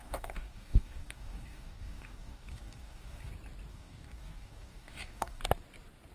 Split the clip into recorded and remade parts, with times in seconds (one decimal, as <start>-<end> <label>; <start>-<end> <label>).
0.0-3.3 remade; 3.3-3.7 recorded; 3.7-5.4 remade; 5.4-6.1 recorded